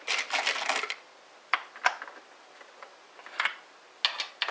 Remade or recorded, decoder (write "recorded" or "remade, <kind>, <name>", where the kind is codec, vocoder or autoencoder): recorded